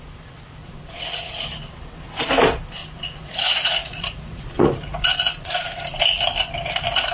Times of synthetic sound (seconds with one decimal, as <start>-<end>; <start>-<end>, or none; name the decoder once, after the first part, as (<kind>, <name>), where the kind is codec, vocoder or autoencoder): 0.6-1.3 (vocoder, Vocos); 2.8-6.0